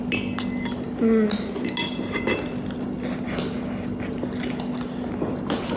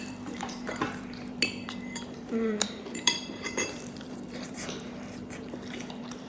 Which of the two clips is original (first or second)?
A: first